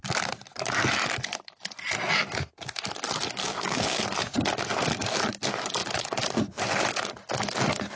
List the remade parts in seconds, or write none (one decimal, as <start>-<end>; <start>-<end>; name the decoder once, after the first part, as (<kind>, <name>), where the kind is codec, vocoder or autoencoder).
3.4-4.0 (codec, DAC)